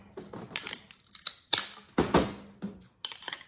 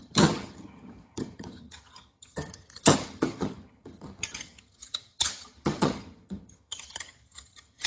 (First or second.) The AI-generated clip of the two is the second